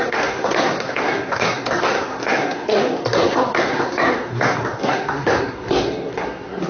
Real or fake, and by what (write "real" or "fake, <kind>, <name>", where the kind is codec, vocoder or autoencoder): fake, codec, SNAC